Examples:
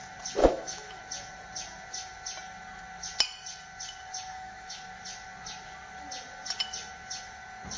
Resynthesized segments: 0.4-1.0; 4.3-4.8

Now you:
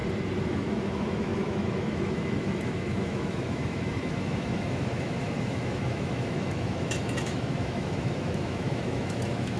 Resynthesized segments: 0.5-9.6

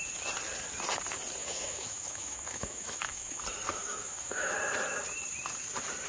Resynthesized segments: 1.4-3.4; 3.8-4.5

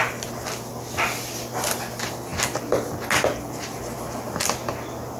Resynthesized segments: none

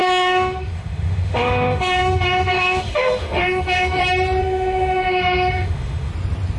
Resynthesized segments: 0.0-4.0; 4.4-6.1